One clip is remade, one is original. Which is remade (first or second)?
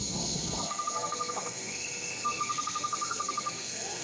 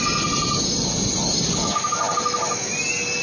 first